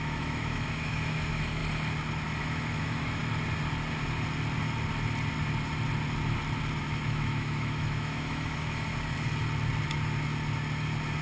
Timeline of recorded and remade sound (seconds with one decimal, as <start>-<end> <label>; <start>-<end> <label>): 0.0-1.6 remade; 1.6-2.4 recorded; 2.4-3.2 remade; 3.2-6.8 recorded; 6.8-8.9 remade; 8.9-11.2 recorded

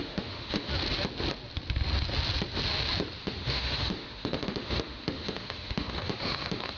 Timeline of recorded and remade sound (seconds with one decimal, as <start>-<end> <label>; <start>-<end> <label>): 0.0-0.7 remade; 0.7-3.2 recorded; 3.2-6.8 remade

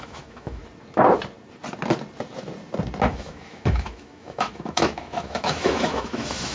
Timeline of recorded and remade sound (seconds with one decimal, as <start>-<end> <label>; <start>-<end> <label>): 0.0-0.6 remade; 0.6-3.1 recorded; 3.1-6.5 remade

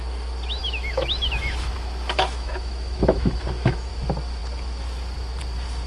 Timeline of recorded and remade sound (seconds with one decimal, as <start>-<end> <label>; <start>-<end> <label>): 0.0-0.6 recorded; 0.6-3.9 remade; 3.9-5.9 recorded

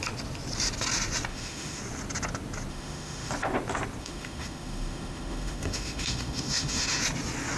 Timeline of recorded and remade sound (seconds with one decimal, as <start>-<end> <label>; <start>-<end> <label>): 0.0-1.3 recorded; 1.3-1.8 remade; 1.8-2.7 recorded; 2.7-3.3 remade; 3.3-4.0 recorded; 4.0-7.0 remade; 7.0-7.6 recorded

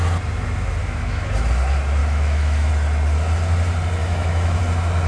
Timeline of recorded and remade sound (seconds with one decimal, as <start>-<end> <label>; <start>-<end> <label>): 0.0-0.8 recorded; 0.8-1.3 remade; 1.3-2.0 recorded; 2.0-2.7 remade; 2.7-4.0 recorded; 4.0-4.6 remade; 4.6-5.1 recorded

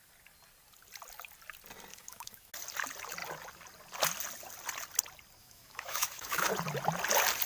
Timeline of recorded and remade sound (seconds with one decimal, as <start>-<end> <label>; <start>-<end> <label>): 0.0-1.9 recorded; 1.9-2.5 remade; 2.5-5.4 recorded; 5.4-6.5 remade; 6.5-7.5 recorded